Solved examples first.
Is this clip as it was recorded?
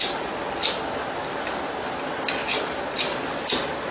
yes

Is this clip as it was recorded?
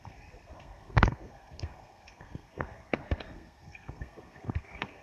no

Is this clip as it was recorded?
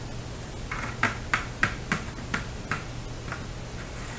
yes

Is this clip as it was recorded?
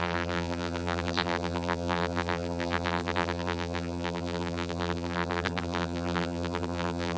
no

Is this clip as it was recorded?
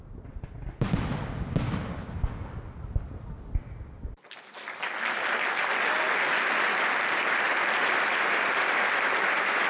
yes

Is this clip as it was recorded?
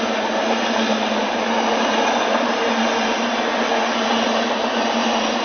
yes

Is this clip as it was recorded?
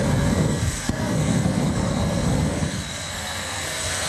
no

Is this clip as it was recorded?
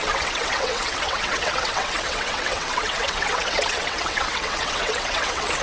no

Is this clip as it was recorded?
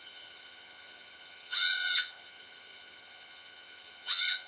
no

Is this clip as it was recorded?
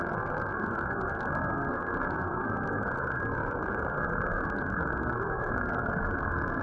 no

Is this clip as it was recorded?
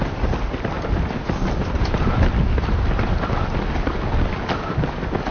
yes